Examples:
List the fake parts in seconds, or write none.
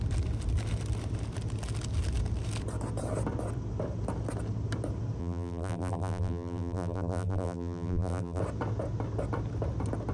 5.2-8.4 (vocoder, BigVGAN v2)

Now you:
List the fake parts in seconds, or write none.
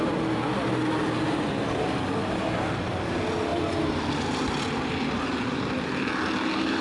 none